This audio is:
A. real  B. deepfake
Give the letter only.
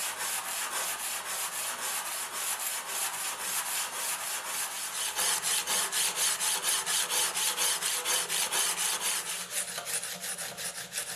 A